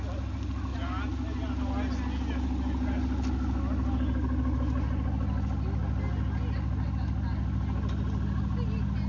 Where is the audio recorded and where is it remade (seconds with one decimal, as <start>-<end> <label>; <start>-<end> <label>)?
0.0-9.1 recorded